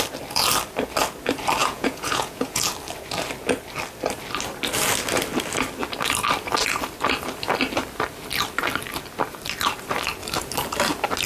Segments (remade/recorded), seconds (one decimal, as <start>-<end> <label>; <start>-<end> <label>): 0.0-1.6 recorded; 1.6-2.6 remade; 2.6-11.3 recorded